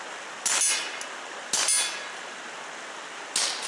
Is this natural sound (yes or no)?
yes